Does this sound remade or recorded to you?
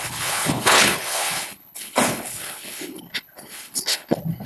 remade